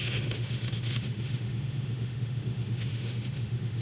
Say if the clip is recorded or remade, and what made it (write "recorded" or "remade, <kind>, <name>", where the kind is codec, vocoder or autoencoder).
remade, autoencoder, DAC-VAE